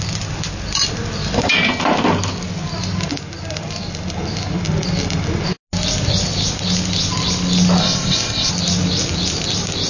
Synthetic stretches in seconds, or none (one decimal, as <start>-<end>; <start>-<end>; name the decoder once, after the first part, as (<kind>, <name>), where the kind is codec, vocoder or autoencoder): 7.8-8.5 (codec, ZipCodec)